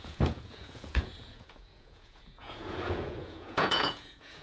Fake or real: fake